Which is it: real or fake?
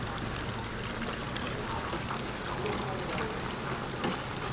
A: real